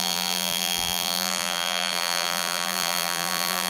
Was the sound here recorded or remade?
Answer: remade